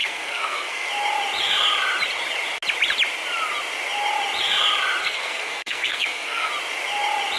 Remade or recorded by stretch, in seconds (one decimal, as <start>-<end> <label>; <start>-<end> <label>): 0.0-0.9 remade; 0.9-5.0 recorded; 5.0-6.5 remade; 6.5-7.4 recorded